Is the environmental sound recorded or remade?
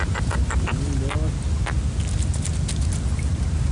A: recorded